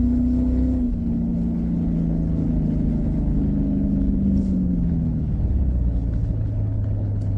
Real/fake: fake